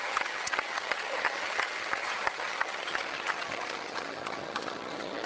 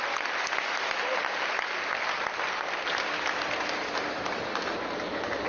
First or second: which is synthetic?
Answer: first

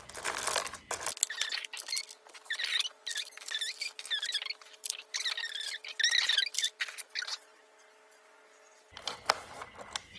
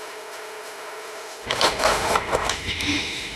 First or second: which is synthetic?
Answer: second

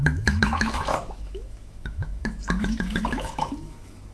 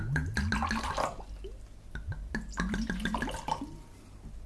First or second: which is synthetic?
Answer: first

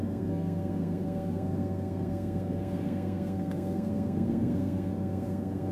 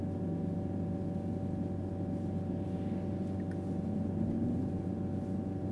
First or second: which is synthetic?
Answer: first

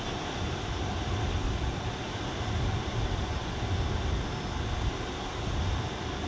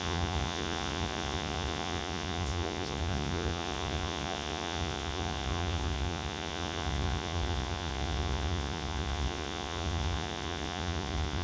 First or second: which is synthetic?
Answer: second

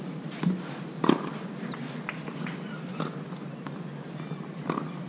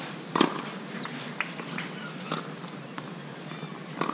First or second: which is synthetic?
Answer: second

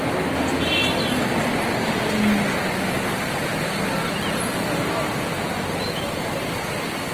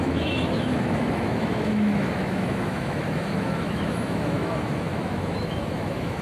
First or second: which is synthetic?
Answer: second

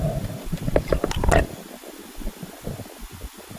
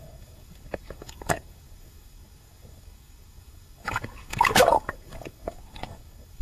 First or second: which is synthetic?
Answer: second